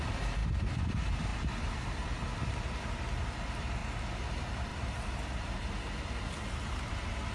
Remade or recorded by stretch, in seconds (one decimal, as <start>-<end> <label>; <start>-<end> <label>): 0.0-0.4 remade; 0.4-0.9 recorded; 0.9-3.8 remade; 3.8-4.3 recorded; 4.3-7.3 remade